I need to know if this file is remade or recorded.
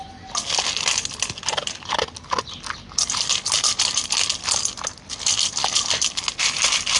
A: recorded